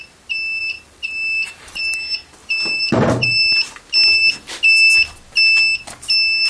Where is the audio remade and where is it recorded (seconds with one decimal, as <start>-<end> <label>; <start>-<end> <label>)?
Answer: 0.0-0.6 recorded; 0.6-1.8 remade; 1.8-2.4 recorded; 2.4-3.8 remade; 3.8-6.5 recorded